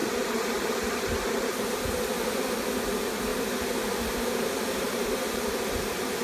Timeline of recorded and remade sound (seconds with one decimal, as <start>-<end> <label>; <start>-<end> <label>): 0.0-3.3 recorded; 3.3-6.2 remade